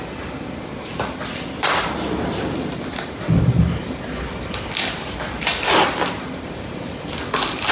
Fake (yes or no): no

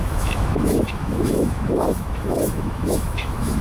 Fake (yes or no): yes